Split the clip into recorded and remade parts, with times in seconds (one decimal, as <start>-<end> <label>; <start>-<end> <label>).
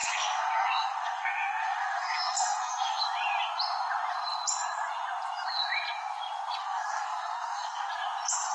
0.0-3.0 remade; 3.0-6.6 recorded; 6.6-7.9 remade; 7.9-8.5 recorded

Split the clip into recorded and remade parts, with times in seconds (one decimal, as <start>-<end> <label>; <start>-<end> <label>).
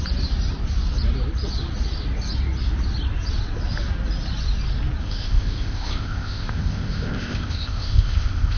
0.0-5.0 recorded; 5.0-8.6 remade